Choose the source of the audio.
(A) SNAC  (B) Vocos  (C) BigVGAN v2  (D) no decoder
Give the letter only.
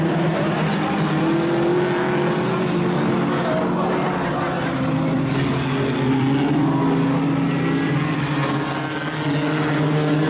D